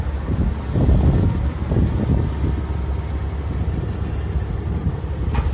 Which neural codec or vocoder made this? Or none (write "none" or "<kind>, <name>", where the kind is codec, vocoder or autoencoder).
none